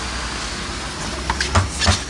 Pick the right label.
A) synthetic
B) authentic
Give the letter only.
B